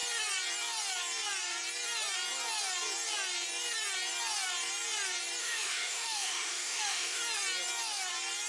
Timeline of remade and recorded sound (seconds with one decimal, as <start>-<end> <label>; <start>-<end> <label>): 0.0-5.4 recorded; 5.4-7.2 remade; 7.2-8.5 recorded